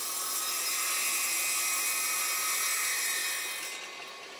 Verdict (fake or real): real